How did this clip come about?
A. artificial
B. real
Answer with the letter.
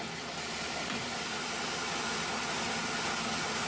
B